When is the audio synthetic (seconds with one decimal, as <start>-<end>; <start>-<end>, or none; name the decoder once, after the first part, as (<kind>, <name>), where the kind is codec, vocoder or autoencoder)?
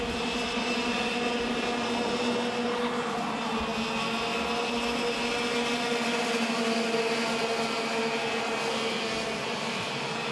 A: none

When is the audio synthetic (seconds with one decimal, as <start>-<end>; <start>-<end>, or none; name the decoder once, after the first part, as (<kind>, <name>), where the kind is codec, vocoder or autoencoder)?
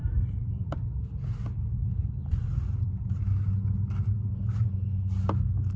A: 0.0-1.0 (vocoder, BigVGAN v2)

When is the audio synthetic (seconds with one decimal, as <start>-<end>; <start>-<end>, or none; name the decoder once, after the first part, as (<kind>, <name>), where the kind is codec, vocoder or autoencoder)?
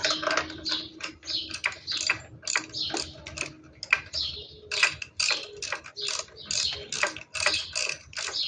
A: none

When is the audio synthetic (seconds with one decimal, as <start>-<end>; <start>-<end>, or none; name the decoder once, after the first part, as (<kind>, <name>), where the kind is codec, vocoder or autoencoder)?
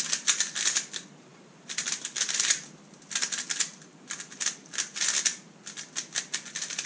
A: none